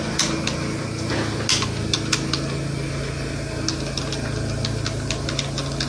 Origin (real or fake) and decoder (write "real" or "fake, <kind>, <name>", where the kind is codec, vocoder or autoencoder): real